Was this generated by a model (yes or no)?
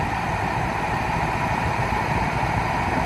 no